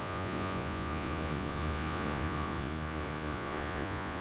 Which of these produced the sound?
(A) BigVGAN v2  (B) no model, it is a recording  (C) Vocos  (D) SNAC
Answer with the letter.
C